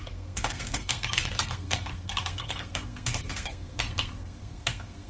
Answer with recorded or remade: remade